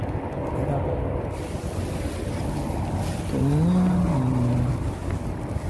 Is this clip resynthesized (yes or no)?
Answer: no